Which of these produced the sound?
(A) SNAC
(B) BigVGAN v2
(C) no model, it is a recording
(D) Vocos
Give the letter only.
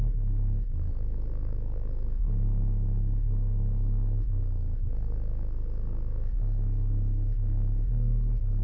A